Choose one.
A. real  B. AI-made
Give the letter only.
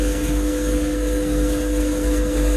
B